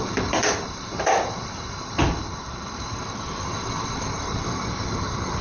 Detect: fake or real fake